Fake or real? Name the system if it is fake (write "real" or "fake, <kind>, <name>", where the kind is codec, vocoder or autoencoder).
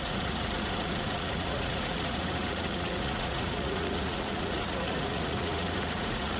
fake, vocoder, Vocos